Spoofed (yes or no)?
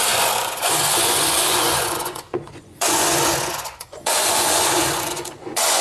yes